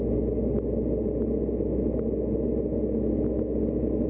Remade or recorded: recorded